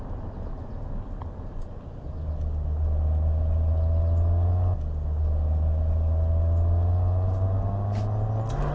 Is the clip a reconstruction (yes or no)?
no